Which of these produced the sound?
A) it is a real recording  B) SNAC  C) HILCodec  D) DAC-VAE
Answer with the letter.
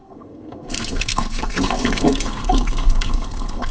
B